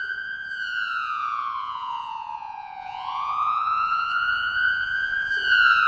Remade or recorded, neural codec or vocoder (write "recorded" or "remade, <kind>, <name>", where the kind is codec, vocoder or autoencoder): remade, vocoder, Vocos